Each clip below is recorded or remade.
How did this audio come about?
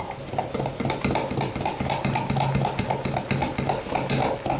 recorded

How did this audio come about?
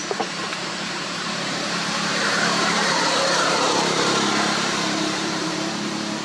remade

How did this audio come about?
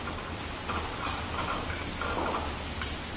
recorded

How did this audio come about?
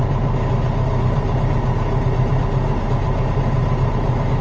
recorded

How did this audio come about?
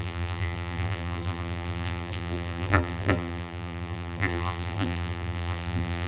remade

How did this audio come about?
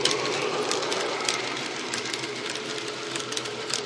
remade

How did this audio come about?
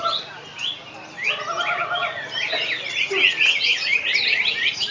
recorded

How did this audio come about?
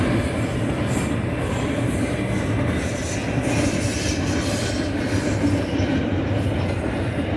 recorded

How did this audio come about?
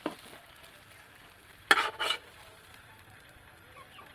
recorded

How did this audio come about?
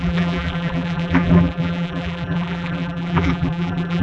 remade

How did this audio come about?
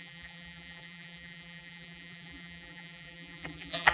remade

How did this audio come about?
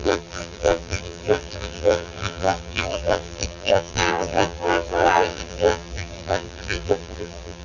remade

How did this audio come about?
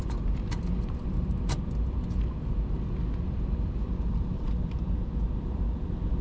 remade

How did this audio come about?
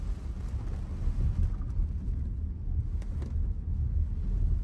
recorded